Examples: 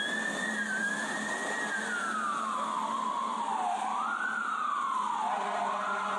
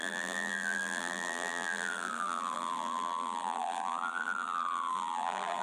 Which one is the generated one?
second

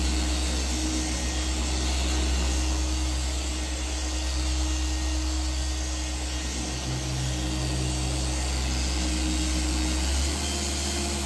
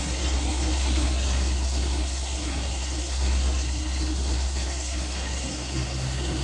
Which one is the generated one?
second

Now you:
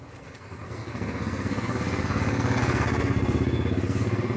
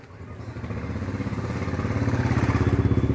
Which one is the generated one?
first